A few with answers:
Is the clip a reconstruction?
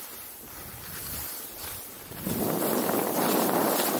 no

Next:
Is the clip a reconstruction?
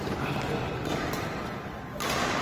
no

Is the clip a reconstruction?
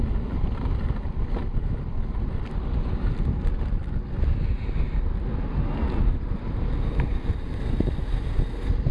no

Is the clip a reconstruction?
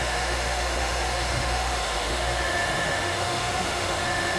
yes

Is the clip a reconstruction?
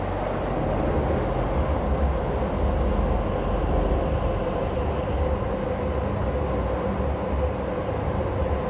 no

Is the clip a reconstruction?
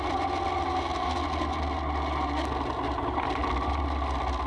no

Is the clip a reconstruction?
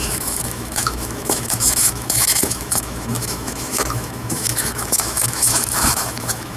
yes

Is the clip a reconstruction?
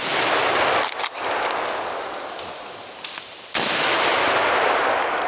no